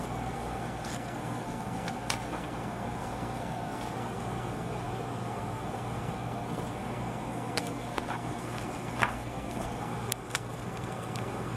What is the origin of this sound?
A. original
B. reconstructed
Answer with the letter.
B